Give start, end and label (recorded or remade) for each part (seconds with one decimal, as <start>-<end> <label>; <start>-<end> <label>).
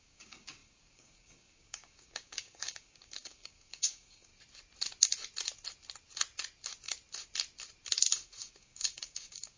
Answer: 0.0-4.3 remade; 4.3-8.1 recorded; 8.1-9.6 remade